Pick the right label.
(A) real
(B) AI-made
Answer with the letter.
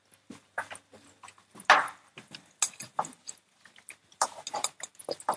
A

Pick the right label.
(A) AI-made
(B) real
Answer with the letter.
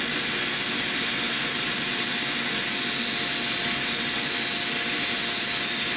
B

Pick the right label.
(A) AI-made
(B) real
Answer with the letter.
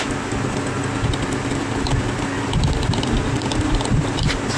B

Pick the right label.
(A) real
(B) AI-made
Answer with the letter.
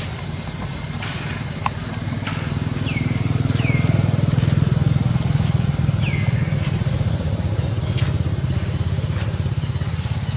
A